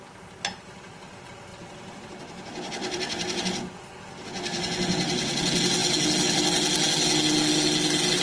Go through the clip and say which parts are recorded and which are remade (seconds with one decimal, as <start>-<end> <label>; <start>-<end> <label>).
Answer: 0.0-1.5 recorded; 1.5-2.0 remade; 2.0-2.8 recorded; 2.8-3.4 remade; 3.4-8.2 recorded